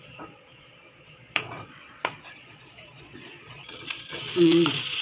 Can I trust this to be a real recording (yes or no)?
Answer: no